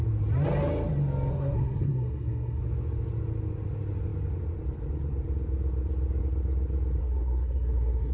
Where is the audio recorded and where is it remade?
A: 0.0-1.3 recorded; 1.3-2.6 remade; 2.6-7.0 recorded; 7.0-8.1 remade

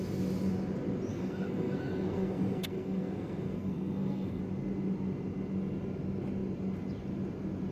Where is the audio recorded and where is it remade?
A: 0.0-1.1 recorded; 1.1-4.4 remade; 4.4-7.7 recorded

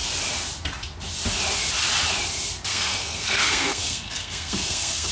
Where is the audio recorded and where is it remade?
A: 0.0-2.7 recorded; 2.7-5.1 remade

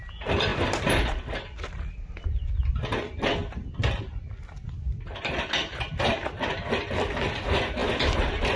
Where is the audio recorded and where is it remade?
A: 0.0-8.6 recorded

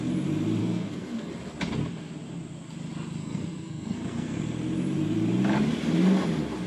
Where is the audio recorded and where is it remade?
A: 0.0-0.6 recorded; 0.6-1.3 remade; 1.3-3.2 recorded; 3.2-4.4 remade; 4.4-6.7 recorded

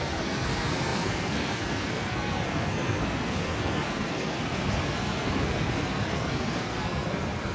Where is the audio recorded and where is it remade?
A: 0.0-7.5 remade

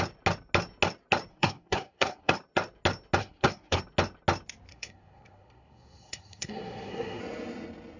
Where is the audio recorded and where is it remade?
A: 0.0-1.3 recorded; 1.3-2.3 remade; 2.3-3.2 recorded; 3.2-3.8 remade; 3.8-4.7 recorded; 4.7-7.2 remade; 7.2-8.0 recorded